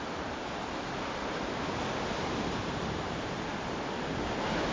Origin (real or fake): real